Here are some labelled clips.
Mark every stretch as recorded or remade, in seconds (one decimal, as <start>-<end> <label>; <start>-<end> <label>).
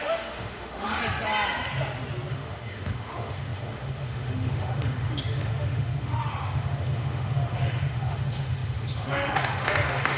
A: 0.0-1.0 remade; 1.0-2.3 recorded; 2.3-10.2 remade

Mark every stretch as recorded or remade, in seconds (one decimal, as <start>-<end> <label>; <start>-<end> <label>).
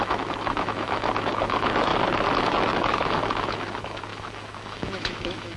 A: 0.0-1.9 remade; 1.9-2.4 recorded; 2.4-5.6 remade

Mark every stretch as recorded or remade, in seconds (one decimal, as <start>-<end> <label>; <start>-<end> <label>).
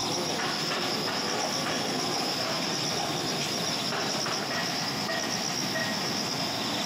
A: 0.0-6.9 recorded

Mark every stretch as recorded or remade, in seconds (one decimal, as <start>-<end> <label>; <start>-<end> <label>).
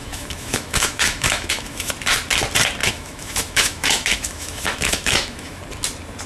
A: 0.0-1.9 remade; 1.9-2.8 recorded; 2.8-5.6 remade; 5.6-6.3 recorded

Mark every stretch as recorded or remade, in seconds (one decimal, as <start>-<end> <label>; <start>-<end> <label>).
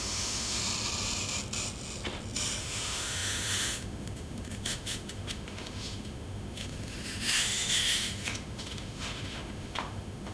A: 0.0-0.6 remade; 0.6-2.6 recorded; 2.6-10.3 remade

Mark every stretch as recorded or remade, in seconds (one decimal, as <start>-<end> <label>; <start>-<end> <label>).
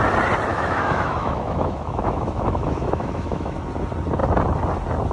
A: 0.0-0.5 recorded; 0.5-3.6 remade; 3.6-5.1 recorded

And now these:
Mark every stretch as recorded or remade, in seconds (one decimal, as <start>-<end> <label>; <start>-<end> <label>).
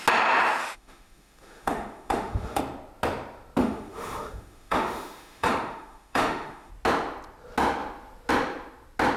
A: 0.0-0.6 recorded; 0.6-2.6 remade; 2.6-3.6 recorded; 3.6-6.7 remade; 6.7-9.2 recorded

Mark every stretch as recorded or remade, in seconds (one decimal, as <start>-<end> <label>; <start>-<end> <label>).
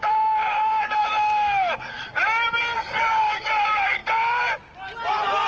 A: 0.0-2.6 remade; 2.6-3.2 recorded; 3.2-4.0 remade; 4.0-5.5 recorded